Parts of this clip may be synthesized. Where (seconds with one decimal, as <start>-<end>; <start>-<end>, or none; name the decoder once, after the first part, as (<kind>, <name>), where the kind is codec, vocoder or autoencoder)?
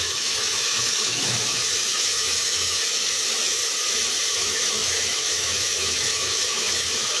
0.0-3.6 (autoencoder, DAC-VAE); 4.3-7.2